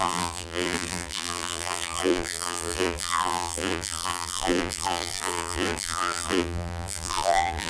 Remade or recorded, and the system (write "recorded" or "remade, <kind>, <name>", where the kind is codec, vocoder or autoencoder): remade, vocoder, BigVGAN v2